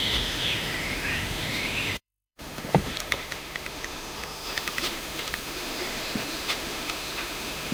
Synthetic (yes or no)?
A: yes